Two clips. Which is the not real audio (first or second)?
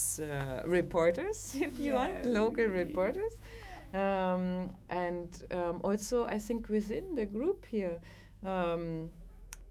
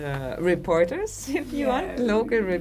first